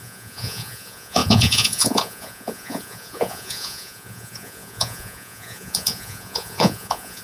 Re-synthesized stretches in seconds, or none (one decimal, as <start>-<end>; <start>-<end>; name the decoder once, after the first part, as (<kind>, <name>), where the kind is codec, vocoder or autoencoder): 0.0-7.2 (vocoder, Vocos)